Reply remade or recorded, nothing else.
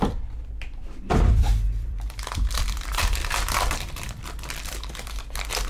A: remade